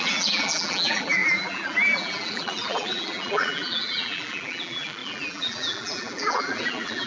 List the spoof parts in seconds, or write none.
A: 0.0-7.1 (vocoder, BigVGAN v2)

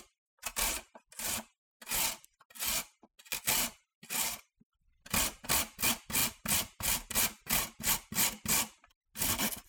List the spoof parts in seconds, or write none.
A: 3.9-4.5 (vocoder, BigVGAN v2)

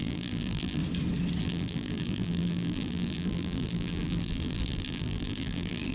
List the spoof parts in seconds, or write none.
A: 0.0-0.8 (vocoder, BigVGAN v2); 1.4-5.9

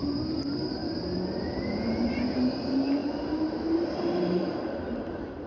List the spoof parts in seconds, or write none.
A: 0.0-0.8 (vocoder, BigVGAN v2); 1.7-5.5